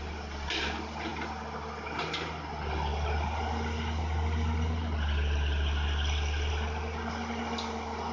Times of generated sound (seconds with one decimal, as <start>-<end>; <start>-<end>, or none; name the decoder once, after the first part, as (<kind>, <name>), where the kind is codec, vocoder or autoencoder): none